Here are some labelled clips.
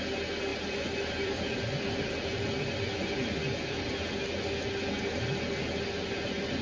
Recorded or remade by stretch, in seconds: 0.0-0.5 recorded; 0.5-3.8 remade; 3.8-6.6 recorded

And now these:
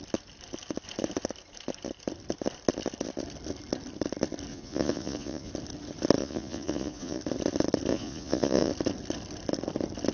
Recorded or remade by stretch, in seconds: 0.0-4.5 recorded; 4.5-5.5 remade; 5.5-6.2 recorded; 6.2-7.2 remade; 7.2-7.9 recorded; 7.9-8.7 remade; 8.7-10.1 recorded

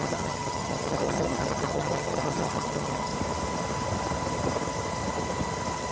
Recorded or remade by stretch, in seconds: 0.0-3.1 remade; 3.1-5.9 recorded

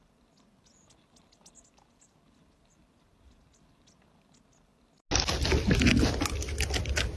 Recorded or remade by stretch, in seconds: 0.0-7.2 recorded

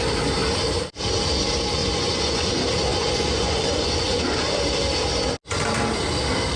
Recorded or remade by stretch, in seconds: 0.0-1.8 recorded; 1.8-2.5 remade; 2.5-2.9 recorded; 2.9-4.5 remade; 4.5-6.6 recorded

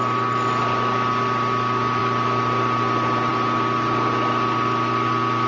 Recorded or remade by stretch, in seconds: 0.0-5.5 recorded